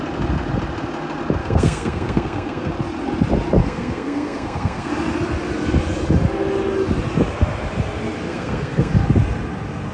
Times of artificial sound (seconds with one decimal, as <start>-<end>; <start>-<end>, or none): 1.4-2.7; 3.6-4.9; 8.3-8.9